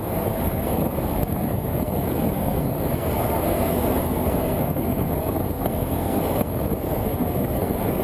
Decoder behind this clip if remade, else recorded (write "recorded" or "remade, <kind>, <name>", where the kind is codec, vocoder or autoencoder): remade, codec, SNAC